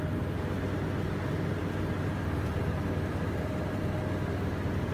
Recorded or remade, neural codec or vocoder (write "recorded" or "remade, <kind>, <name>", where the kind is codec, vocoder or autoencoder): recorded